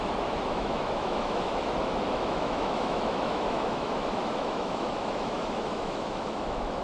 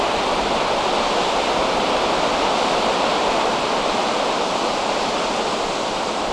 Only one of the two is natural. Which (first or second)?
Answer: second